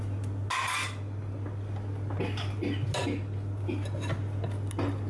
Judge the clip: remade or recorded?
recorded